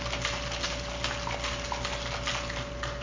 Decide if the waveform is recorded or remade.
recorded